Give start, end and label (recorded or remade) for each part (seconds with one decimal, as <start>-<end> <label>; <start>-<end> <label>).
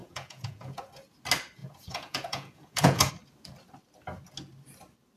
0.0-0.8 remade; 0.8-1.6 recorded; 1.6-3.1 remade; 3.1-5.2 recorded